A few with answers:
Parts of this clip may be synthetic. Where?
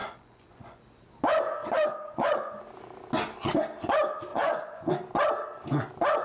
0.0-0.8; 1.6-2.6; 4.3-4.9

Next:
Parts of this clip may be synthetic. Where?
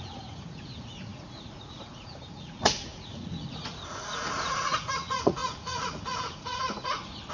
0.0-7.3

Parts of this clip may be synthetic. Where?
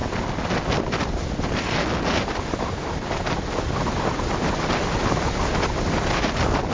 none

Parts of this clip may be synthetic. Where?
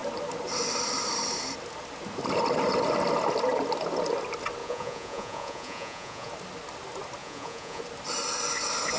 4.6-6.3; 7.2-7.8